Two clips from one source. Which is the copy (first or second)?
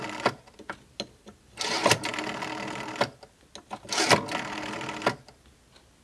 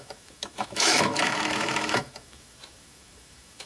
second